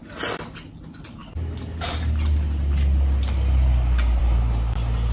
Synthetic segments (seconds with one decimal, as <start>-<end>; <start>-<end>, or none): none